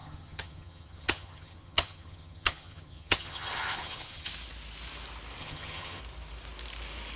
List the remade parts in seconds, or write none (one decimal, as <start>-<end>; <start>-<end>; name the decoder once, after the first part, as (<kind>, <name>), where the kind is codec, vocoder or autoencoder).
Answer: 0.0-4.3 (vocoder, HiFi-GAN); 5.4-6.0